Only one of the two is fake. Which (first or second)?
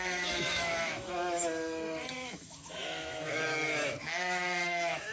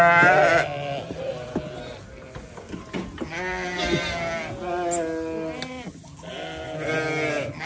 first